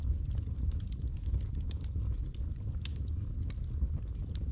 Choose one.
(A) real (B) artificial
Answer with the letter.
A